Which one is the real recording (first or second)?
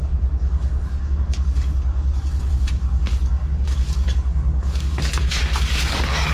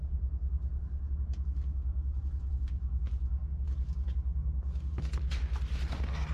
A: second